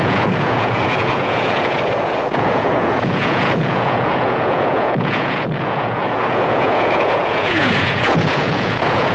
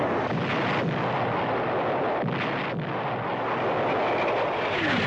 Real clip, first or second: second